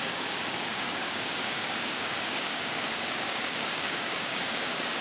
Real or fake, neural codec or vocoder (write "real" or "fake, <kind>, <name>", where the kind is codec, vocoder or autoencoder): fake, codec, DAC